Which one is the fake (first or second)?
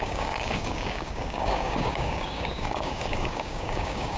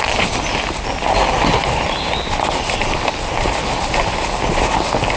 first